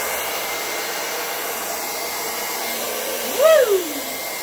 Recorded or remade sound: remade